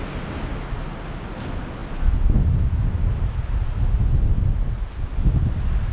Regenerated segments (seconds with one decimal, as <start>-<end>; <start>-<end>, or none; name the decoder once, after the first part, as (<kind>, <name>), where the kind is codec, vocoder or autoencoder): none